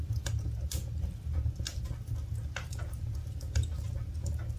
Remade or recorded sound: recorded